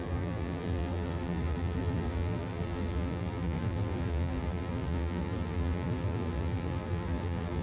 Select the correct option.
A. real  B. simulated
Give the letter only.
B